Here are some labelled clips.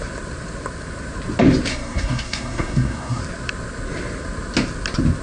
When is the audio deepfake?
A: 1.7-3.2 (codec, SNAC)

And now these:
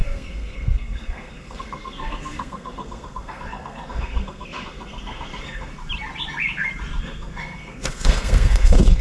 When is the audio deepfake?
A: 0.0-5.7 (codec, SNAC); 7.0-9.0

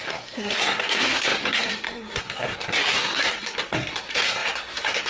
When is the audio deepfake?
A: 0.0-5.1 (codec, SNAC)

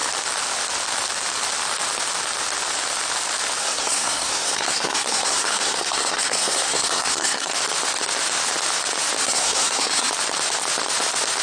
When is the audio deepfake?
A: 3.6-7.5 (codec, SNAC); 9.2-10.1